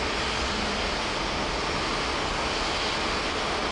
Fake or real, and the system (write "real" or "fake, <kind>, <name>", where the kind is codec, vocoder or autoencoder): real